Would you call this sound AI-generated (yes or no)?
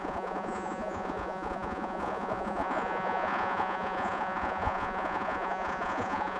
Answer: yes